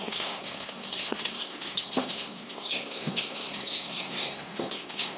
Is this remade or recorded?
remade